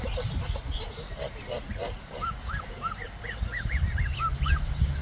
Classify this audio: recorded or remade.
recorded